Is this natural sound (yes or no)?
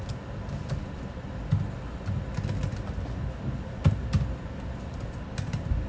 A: yes